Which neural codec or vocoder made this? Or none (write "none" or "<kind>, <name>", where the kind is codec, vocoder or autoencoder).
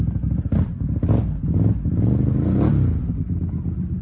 none